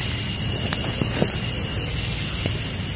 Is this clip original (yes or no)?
yes